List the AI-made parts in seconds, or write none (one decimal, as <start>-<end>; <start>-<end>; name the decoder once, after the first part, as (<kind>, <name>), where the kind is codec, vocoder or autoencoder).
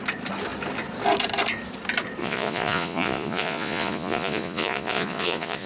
2.2-5.7 (vocoder, Vocos)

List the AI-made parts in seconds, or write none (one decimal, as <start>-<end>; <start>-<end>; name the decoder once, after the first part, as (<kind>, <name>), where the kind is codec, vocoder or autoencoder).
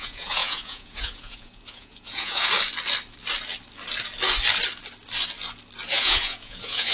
0.0-2.5 (vocoder, Vocos); 5.9-6.9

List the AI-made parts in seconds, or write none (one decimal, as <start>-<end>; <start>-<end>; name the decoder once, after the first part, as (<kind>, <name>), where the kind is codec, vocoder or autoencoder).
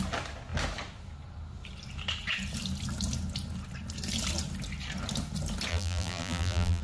5.7-6.8 (vocoder, BigVGAN v2)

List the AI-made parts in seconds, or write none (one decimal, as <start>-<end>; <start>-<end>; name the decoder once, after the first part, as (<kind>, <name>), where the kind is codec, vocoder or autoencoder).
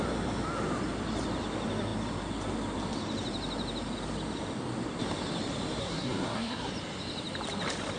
5.8-6.7 (codec, SNAC)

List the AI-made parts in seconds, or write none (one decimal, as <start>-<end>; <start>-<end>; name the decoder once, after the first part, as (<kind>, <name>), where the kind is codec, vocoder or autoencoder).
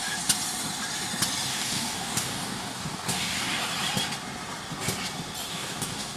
1.5-3.6 (codec, DAC); 5.5-6.2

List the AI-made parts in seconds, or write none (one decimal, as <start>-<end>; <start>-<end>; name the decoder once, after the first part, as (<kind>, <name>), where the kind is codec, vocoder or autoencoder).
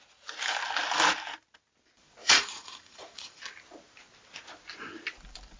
2.2-3.4 (vocoder, Vocos)